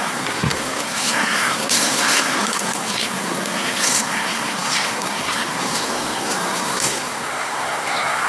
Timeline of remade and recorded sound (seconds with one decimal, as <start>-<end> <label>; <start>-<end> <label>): 0.0-8.3 remade